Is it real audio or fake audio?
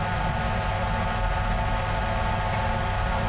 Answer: real